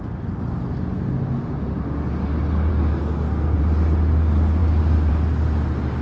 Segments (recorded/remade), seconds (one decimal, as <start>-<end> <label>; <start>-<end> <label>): 0.0-2.7 recorded; 2.7-3.6 remade; 3.6-6.0 recorded